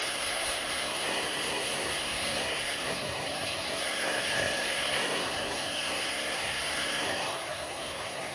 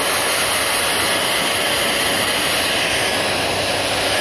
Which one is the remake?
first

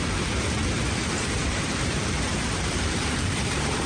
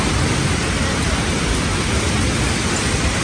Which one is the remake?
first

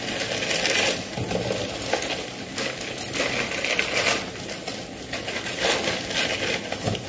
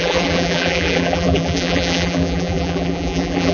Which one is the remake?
second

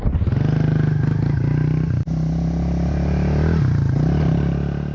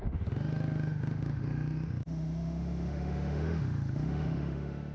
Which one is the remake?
second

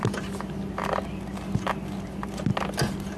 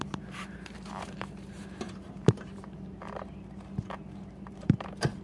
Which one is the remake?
second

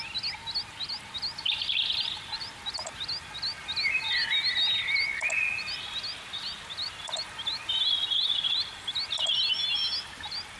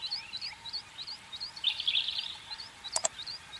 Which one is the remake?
second